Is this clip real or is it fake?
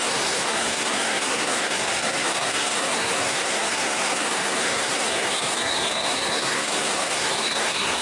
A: fake